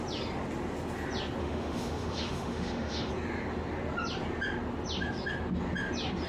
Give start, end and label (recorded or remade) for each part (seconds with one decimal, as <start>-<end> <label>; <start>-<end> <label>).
0.0-1.4 recorded; 1.4-3.1 remade; 3.1-6.3 recorded

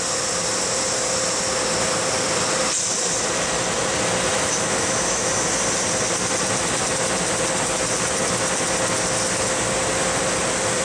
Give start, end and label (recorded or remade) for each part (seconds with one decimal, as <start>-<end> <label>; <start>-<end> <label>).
0.0-4.3 recorded; 4.3-5.5 remade; 5.5-10.8 recorded

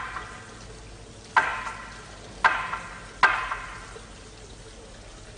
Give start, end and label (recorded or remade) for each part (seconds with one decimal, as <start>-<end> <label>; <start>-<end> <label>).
0.0-5.4 recorded

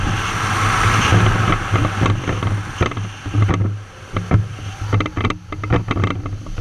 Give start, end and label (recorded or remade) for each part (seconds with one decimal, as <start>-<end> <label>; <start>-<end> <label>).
0.0-6.6 recorded

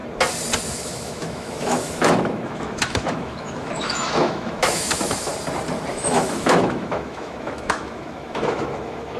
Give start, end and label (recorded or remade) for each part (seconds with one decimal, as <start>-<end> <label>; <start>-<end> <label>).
0.0-0.7 recorded; 0.7-5.3 remade; 5.3-5.9 recorded; 5.9-9.2 remade

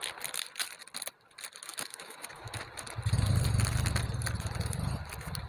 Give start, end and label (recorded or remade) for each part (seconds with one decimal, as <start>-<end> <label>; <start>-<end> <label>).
0.0-1.7 recorded; 1.7-2.5 remade; 2.5-5.5 recorded